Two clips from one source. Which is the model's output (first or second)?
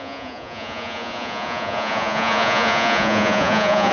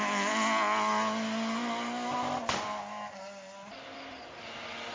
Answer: first